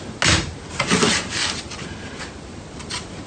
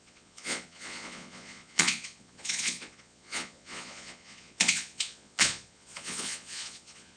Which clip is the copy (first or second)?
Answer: second